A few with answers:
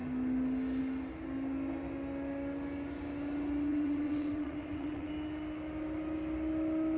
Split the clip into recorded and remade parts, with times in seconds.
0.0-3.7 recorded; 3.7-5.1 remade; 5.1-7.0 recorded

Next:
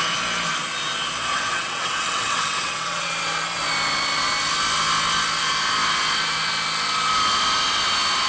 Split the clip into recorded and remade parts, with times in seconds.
0.0-1.3 recorded; 1.3-3.1 remade; 3.1-8.3 recorded

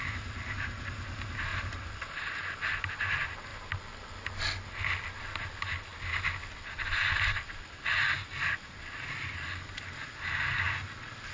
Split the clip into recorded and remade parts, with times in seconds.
0.0-11.3 recorded

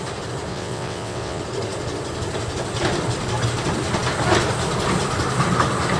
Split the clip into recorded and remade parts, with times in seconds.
0.0-0.5 recorded; 0.5-1.4 remade; 1.4-6.0 recorded

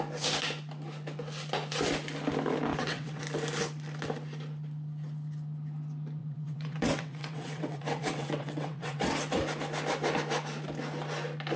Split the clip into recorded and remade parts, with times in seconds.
0.0-2.7 recorded; 2.7-3.2 remade; 3.2-6.2 recorded; 6.2-9.0 remade; 9.0-11.6 recorded